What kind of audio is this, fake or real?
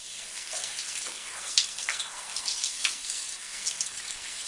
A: fake